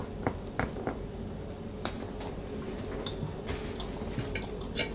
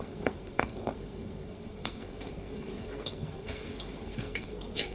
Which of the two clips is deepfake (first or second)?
second